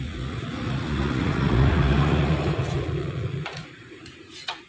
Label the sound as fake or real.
fake